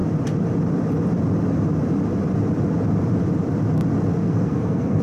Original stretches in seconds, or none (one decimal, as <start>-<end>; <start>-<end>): 0.0-4.2